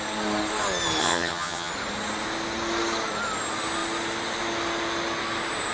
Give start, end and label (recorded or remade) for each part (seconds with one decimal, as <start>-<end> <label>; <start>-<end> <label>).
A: 0.0-1.0 recorded; 1.0-1.7 remade; 1.7-5.7 recorded